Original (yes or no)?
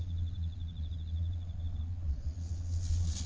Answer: no